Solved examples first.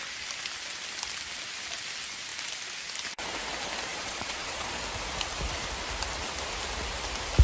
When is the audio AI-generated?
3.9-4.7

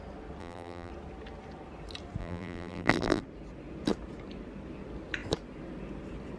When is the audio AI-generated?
0.4-0.9; 2.2-3.2

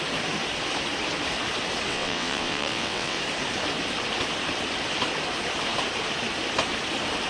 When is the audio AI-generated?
1.9-3.2